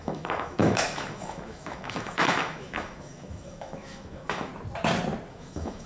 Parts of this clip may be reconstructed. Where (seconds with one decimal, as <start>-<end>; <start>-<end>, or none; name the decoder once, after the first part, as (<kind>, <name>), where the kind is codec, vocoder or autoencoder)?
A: 0.0-4.5 (autoencoder, DAC-VAE); 5.3-5.9